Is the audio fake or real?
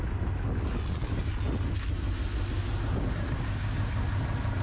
real